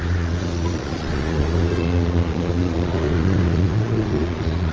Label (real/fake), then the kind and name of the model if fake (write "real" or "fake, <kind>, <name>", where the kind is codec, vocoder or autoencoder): fake, vocoder, Vocos